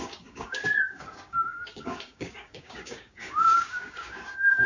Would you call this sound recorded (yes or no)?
no